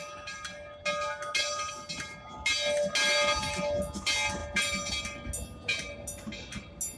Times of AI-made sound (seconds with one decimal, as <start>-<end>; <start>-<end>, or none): none

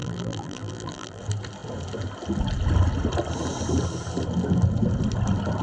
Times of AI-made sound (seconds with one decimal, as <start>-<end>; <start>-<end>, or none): 0.0-1.2